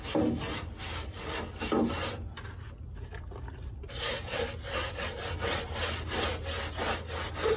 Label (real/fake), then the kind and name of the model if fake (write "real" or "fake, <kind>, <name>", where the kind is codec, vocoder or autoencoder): real